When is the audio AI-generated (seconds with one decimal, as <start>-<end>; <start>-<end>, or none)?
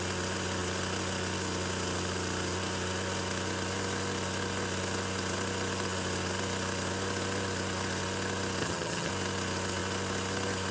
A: 8.6-9.1